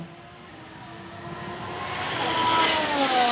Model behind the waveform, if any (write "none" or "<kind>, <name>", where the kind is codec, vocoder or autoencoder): none